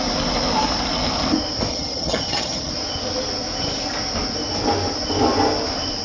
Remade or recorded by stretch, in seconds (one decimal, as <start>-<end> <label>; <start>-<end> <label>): 0.0-1.7 recorded; 1.7-2.7 remade; 2.7-6.0 recorded